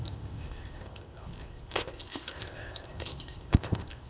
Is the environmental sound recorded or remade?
remade